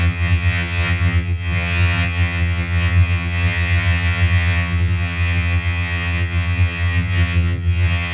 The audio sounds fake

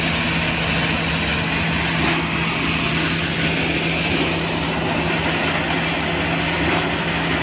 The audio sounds real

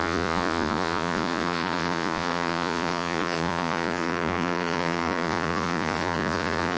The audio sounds fake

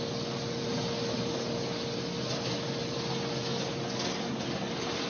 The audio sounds real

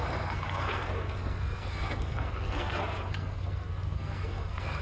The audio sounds fake